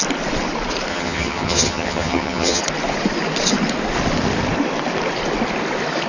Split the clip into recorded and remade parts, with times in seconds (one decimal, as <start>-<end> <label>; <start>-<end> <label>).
0.0-0.9 recorded; 0.9-2.6 remade; 2.6-6.1 recorded